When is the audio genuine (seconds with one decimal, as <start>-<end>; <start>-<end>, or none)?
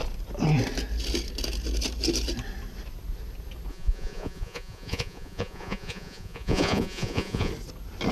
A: 0.0-3.7; 7.5-8.1